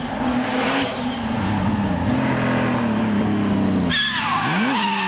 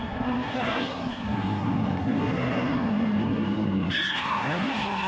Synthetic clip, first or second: second